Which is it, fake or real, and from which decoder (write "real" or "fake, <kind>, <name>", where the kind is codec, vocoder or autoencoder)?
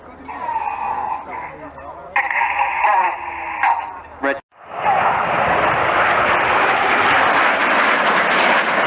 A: real